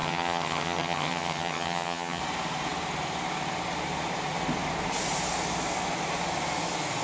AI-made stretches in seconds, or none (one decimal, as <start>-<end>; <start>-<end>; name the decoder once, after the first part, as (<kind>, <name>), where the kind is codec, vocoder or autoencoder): 0.0-2.2 (vocoder, HiFi-GAN)